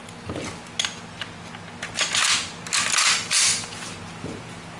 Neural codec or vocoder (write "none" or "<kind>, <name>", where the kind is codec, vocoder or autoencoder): none